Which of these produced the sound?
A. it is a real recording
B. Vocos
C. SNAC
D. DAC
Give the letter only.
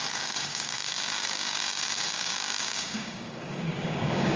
D